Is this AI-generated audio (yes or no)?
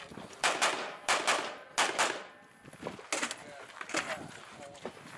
no